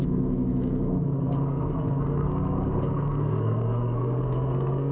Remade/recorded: remade